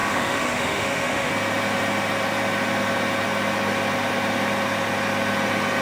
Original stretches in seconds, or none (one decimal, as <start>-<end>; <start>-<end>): 1.3-5.8